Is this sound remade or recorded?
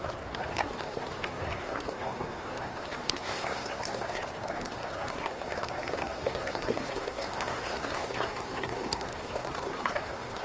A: remade